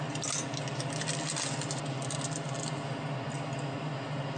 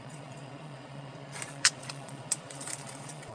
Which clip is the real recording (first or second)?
first